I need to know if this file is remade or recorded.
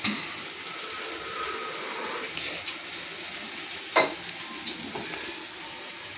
recorded